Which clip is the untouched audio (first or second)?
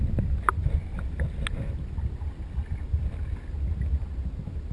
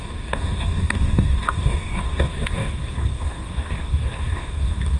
first